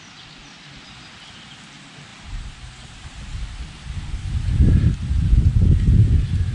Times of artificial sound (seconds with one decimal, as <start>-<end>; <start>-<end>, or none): none